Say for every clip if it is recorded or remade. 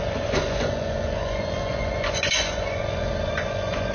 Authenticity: remade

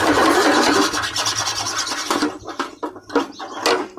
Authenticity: recorded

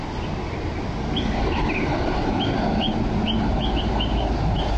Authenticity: recorded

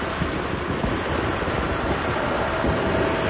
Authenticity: recorded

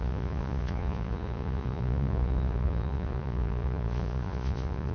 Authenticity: remade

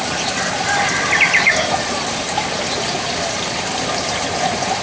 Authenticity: recorded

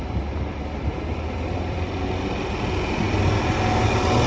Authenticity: recorded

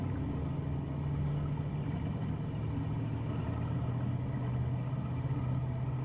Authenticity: recorded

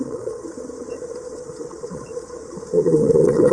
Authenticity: remade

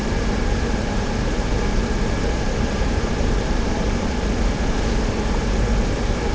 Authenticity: remade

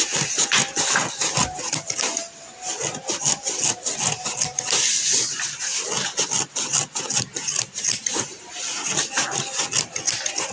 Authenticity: recorded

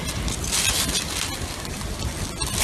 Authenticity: recorded